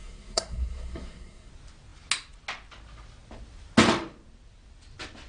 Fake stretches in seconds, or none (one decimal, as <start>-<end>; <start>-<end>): 0.0-1.5